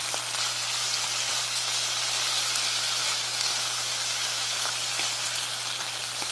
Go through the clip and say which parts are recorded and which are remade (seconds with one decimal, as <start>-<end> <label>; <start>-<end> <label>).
0.0-3.0 recorded; 3.0-4.7 remade; 4.7-6.3 recorded